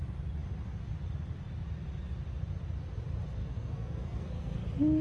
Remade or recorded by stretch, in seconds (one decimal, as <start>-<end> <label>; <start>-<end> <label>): 0.0-3.4 recorded; 3.4-4.6 remade; 4.6-5.0 recorded